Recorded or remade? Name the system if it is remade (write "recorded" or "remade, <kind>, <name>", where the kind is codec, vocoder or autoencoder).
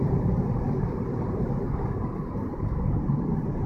recorded